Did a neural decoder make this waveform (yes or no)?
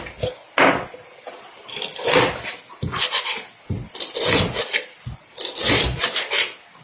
no